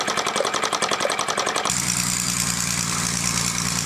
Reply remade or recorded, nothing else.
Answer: recorded